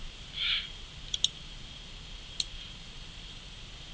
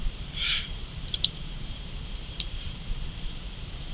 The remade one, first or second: second